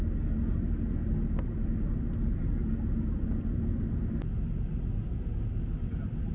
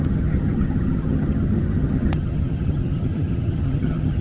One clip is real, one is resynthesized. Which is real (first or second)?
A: first